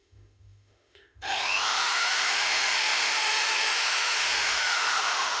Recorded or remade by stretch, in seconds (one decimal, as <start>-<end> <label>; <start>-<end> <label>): 0.0-5.4 remade